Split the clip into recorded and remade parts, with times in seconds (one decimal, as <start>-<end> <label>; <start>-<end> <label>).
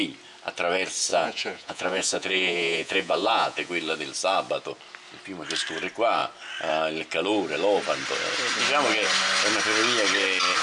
0.0-1.1 recorded; 1.1-3.7 remade; 3.7-10.6 recorded